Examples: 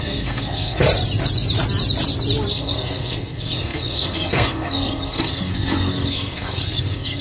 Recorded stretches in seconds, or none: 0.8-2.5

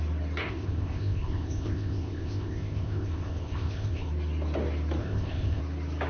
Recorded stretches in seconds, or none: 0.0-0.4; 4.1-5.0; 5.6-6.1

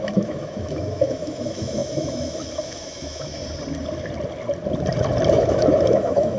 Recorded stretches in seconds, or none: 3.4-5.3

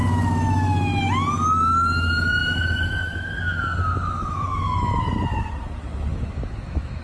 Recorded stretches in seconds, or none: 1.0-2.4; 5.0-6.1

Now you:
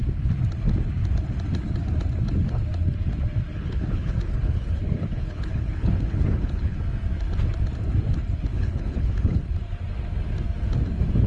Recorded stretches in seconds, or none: 0.0-3.5; 6.8-8.5; 9.4-11.3

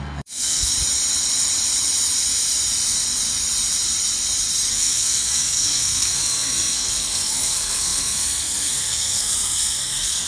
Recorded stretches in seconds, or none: 0.7-4.7